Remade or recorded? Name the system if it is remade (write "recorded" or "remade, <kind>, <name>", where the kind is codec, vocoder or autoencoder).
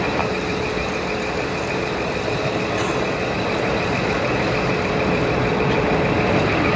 recorded